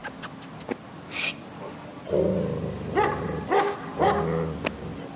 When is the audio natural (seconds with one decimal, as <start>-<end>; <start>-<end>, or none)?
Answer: 0.0-5.2